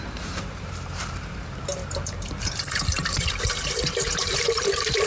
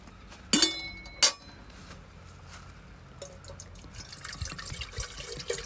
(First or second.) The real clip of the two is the second